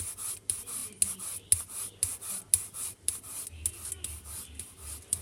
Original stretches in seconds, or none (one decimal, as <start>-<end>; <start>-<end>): 0.0-5.2